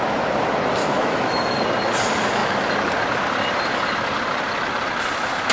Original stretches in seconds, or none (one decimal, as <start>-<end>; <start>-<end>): 0.0-0.8; 1.6-5.5